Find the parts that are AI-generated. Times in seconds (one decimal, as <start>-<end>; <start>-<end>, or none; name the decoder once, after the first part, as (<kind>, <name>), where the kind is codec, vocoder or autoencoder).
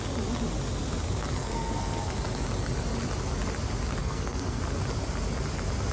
1.3-2.1 (codec, SNAC); 4.0-4.6